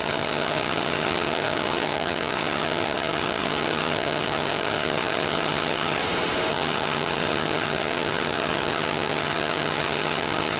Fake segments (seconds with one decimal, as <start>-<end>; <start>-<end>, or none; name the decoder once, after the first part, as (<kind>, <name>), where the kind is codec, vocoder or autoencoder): 0.0-6.0 (vocoder, HiFi-GAN); 6.5-10.6